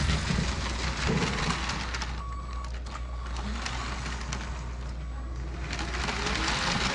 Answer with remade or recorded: recorded